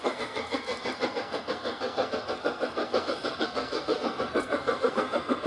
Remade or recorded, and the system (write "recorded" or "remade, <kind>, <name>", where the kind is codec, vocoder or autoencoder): remade, codec, SNAC